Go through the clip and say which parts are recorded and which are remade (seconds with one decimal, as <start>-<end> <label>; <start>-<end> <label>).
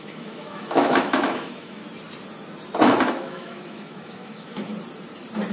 0.0-1.8 remade; 1.8-3.1 recorded; 3.1-4.7 remade; 4.7-5.5 recorded